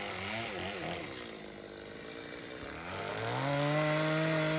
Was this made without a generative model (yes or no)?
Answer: yes